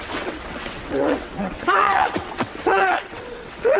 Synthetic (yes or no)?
yes